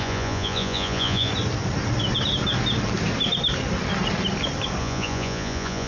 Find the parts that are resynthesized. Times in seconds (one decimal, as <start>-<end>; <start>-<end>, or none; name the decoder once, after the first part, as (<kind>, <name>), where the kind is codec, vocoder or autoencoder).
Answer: 0.0-1.3 (vocoder, Vocos); 4.8-5.9